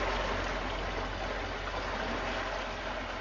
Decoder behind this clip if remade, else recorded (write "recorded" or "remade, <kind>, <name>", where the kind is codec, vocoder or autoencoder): recorded